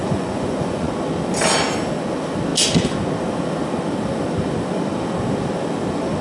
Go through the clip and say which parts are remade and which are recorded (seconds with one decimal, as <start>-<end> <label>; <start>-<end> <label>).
0.0-0.9 remade; 0.9-6.2 recorded

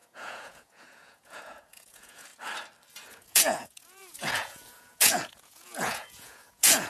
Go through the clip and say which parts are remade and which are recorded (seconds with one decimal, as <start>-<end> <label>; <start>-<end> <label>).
0.0-2.3 remade; 2.3-3.1 recorded; 3.1-6.9 remade

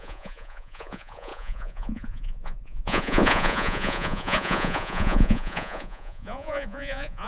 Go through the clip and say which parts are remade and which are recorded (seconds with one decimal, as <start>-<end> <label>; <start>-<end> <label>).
0.0-7.3 remade